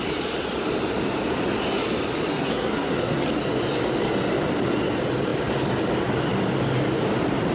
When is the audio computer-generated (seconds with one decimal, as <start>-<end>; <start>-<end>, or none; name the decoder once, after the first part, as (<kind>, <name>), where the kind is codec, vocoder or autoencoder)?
2.3-3.3 (codec, SNAC)